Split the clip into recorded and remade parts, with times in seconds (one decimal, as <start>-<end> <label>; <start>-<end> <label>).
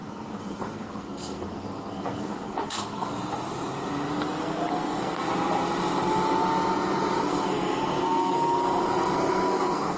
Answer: 0.0-3.1 remade; 3.1-4.4 recorded; 4.4-5.2 remade; 5.2-7.2 recorded; 7.2-10.0 remade